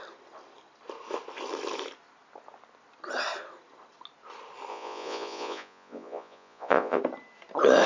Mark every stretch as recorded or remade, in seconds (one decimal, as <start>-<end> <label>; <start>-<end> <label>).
0.0-4.7 recorded; 4.7-7.0 remade; 7.0-7.9 recorded